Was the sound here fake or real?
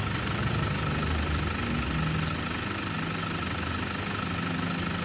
real